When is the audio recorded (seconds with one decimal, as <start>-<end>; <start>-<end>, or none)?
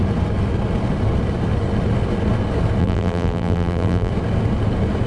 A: 0.0-2.8; 4.1-5.1